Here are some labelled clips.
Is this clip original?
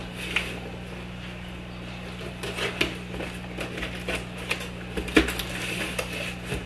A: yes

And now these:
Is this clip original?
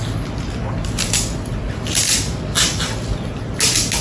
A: yes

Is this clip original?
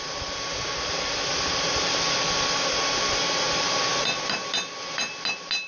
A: yes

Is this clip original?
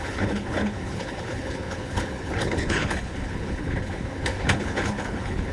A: no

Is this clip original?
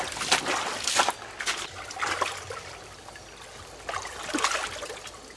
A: yes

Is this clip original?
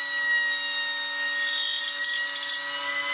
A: yes